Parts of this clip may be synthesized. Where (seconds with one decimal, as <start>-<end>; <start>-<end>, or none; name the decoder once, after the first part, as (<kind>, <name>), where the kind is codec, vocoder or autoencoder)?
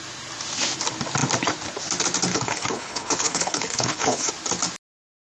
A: 2.3-4.3 (codec, HILCodec)